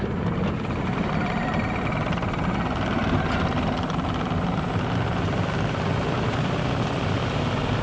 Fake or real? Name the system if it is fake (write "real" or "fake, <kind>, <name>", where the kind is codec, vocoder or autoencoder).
real